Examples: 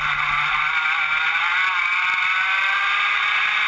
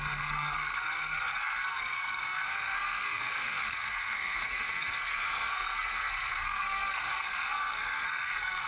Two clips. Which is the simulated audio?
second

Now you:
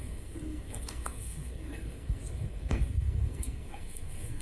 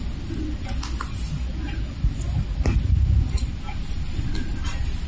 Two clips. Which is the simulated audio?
first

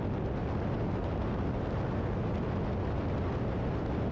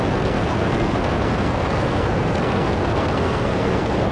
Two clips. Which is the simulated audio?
second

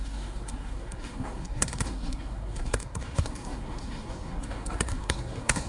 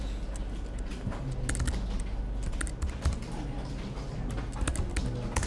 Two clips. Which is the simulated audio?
first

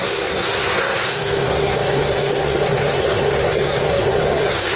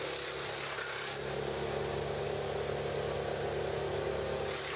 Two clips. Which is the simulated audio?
first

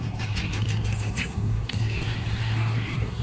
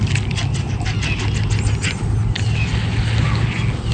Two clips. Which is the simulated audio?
first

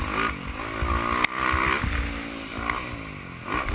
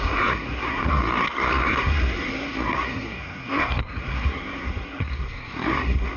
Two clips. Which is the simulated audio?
second